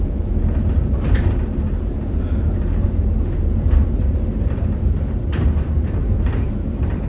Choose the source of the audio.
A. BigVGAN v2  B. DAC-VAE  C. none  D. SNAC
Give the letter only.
A